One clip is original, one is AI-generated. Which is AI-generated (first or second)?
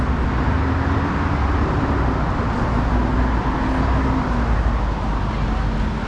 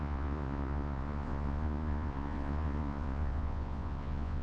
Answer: second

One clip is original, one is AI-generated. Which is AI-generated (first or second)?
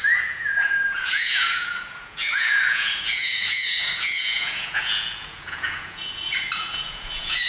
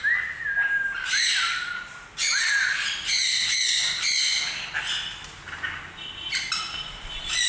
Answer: first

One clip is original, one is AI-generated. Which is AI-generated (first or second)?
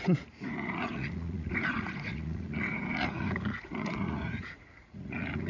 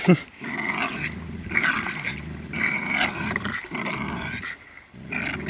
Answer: first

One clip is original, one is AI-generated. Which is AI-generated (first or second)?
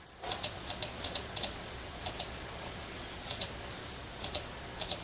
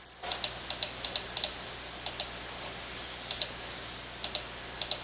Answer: first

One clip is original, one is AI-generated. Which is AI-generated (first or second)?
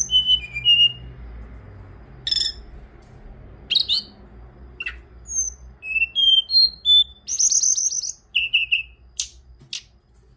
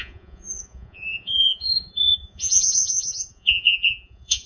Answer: second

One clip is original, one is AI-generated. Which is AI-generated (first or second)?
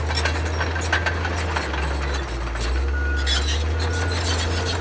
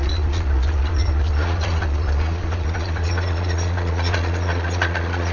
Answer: second